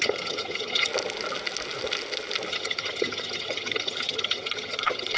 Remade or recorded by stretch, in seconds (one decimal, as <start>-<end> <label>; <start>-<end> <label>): 0.0-0.9 remade; 0.9-2.5 recorded; 2.5-5.2 remade